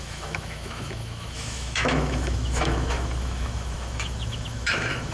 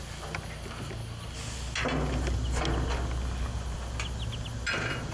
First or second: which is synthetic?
first